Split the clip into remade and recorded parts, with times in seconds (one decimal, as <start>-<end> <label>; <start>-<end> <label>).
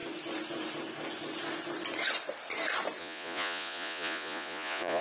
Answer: 0.0-3.0 recorded; 3.0-5.0 remade